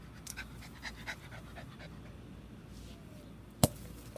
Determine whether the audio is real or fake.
real